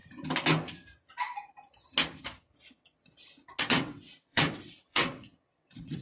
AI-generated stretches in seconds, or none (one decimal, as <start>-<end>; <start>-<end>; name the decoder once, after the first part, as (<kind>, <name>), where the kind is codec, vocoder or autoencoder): 3.6-6.0 (vocoder, WaveNeXt)